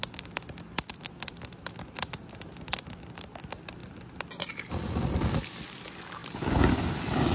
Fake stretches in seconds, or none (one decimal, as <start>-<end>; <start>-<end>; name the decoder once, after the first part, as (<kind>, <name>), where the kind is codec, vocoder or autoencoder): none